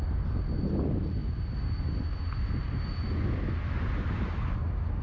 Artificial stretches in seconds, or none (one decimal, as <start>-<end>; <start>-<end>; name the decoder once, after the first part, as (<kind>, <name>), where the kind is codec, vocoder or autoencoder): none